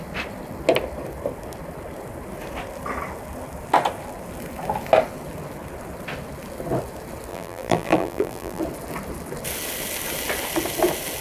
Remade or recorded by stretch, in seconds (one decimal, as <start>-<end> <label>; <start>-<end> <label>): 0.0-7.3 recorded; 7.3-8.6 remade; 8.6-11.2 recorded